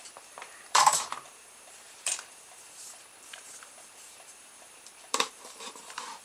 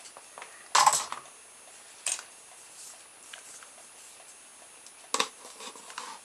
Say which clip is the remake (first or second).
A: first